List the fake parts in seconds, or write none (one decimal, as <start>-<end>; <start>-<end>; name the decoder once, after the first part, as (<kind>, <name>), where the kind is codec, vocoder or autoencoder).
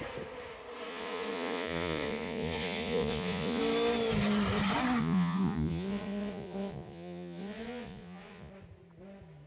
0.9-3.6 (vocoder, Vocos); 5.0-8.5